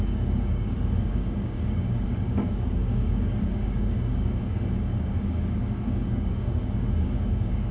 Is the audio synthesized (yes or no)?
yes